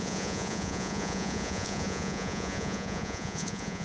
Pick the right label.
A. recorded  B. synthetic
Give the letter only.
B